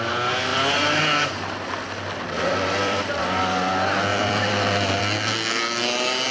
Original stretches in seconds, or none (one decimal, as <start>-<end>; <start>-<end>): 0.0-0.5; 1.0-2.5; 3.2-4.1; 5.0-6.3